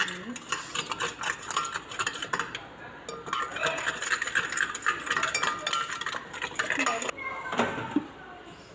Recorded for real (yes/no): yes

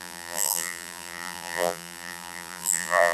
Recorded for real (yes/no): no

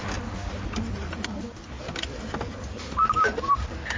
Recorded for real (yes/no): yes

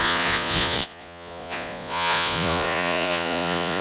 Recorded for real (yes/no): no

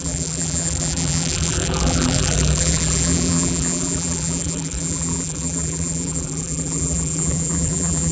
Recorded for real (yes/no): no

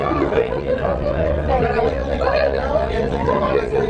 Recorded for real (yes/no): no